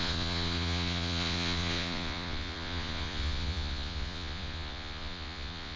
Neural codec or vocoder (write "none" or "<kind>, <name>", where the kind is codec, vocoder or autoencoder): vocoder, Vocos